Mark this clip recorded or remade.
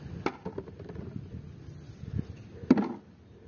recorded